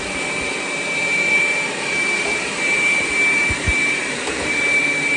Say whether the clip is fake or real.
fake